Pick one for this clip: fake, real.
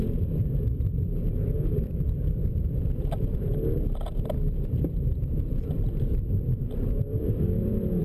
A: fake